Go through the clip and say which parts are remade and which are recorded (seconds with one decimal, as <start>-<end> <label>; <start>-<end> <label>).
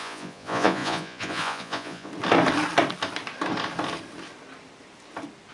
0.0-2.1 remade; 2.1-5.5 recorded